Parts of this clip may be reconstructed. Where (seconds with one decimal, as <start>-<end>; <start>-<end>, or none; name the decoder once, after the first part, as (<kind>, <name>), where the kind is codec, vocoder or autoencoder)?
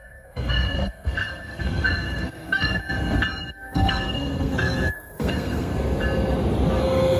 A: 0.0-2.8 (codec, SNAC); 3.5-5.7; 6.8-7.2